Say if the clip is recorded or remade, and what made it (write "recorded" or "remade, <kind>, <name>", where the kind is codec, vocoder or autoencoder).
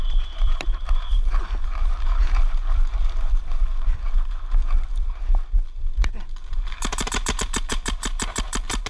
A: remade, vocoder, BigVGAN v2